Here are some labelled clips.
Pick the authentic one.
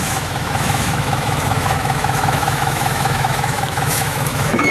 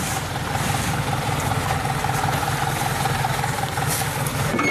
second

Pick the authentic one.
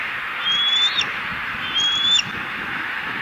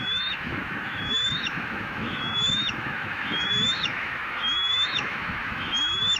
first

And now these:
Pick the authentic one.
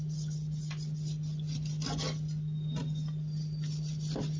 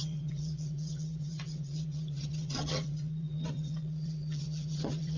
first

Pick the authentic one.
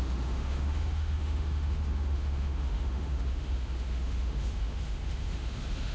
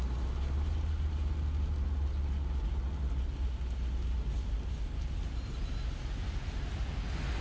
second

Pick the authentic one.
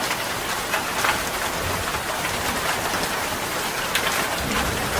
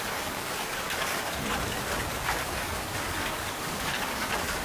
first